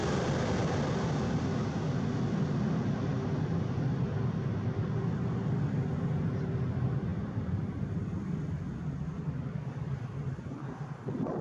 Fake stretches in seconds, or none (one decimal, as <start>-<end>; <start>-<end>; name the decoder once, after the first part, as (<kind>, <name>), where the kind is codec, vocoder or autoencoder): 0.0-0.5 (vocoder, BigVGAN v2); 7.1-8.0